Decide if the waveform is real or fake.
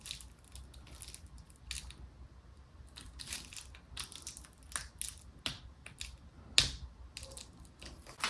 real